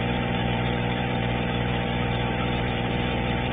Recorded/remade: remade